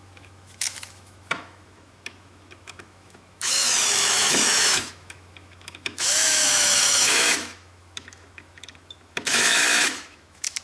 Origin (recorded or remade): remade